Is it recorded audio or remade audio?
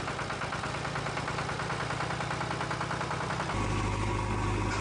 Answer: recorded